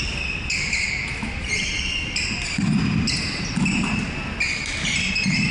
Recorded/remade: recorded